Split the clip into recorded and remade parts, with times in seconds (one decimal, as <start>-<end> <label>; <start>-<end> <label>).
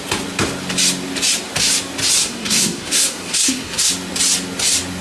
0.0-2.2 recorded; 2.2-3.9 remade; 3.9-5.0 recorded